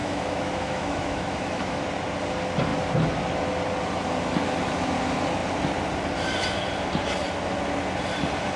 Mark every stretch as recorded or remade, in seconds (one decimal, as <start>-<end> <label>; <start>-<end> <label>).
0.0-1.8 remade; 1.8-8.6 recorded